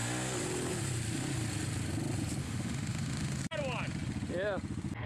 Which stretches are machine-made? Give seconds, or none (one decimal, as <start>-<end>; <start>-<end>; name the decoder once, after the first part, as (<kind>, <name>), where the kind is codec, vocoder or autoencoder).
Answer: 2.4-3.4 (autoencoder, DAC-VAE)